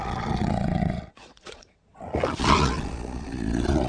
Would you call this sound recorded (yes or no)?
no